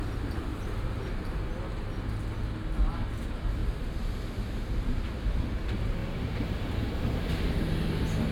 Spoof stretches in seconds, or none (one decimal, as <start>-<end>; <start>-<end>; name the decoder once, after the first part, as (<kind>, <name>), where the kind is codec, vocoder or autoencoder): 0.5-1.4 (vocoder, BigVGAN v2); 3.6-5.0; 6.0-7.6